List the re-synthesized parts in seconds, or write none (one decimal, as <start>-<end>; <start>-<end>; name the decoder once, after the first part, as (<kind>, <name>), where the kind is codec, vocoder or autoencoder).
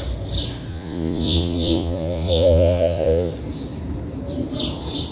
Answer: 0.7-3.3 (vocoder, Vocos)